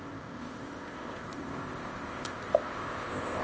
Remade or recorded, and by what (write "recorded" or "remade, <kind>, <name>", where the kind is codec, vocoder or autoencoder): remade, codec, ZipCodec